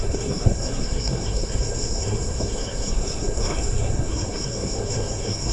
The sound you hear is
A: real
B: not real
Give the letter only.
B